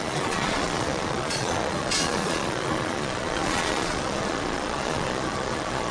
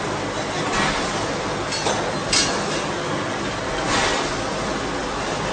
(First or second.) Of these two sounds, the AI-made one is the first